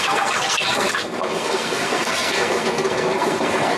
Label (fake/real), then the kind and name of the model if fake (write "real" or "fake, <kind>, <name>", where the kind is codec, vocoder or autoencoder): fake, codec, SNAC